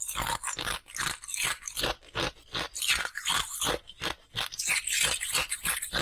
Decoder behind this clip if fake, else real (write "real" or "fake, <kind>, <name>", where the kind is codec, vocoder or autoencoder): real